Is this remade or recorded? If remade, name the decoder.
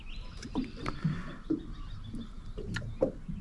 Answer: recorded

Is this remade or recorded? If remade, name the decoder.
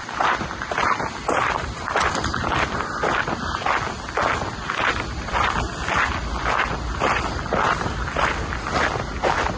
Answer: recorded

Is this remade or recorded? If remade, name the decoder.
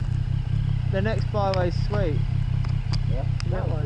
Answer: recorded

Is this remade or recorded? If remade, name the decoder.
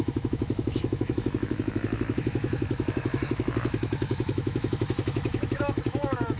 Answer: remade, autoencoder, DAC-VAE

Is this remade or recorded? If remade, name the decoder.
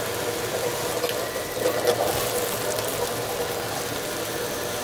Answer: recorded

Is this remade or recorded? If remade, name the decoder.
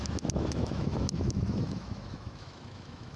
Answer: remade, autoencoder, DAC-VAE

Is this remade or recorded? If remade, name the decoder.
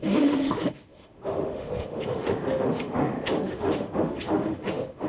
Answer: remade, autoencoder, DAC-VAE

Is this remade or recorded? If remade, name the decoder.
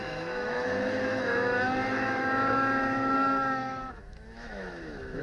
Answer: remade, autoencoder, DAC-VAE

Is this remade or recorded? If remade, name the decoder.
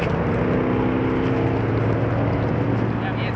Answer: recorded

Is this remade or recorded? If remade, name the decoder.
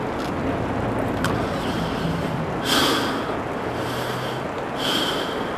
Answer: recorded